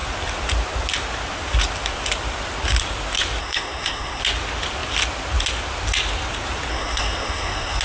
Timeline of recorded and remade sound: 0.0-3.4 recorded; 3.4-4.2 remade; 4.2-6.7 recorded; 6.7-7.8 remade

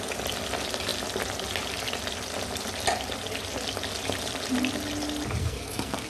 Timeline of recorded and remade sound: 0.0-5.4 recorded; 5.4-6.1 remade

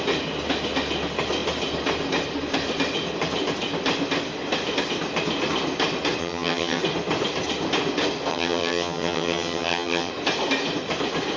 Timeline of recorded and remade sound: 0.0-6.2 recorded; 6.2-6.8 remade; 6.8-8.3 recorded; 8.3-10.1 remade; 10.1-11.4 recorded

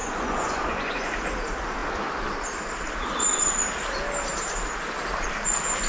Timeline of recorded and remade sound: 0.0-1.1 remade; 1.1-5.9 recorded

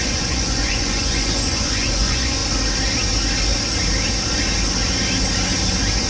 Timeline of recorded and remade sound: 0.0-2.4 remade; 2.4-6.1 recorded

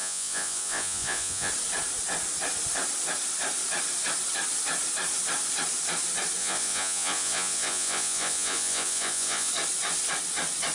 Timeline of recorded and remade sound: 0.0-1.5 remade; 1.5-6.4 recorded; 6.4-9.5 remade; 9.5-10.7 recorded

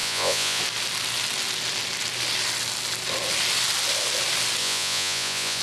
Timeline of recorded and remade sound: 0.0-0.6 remade; 0.6-4.6 recorded; 4.6-5.6 remade